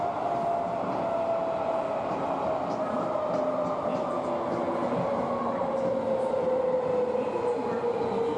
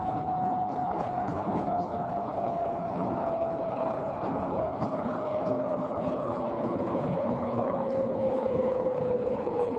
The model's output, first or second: second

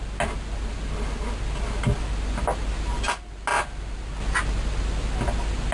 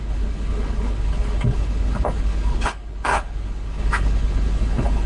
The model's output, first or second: second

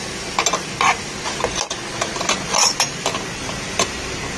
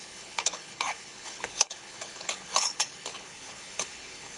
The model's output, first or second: second